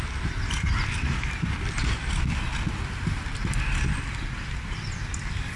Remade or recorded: recorded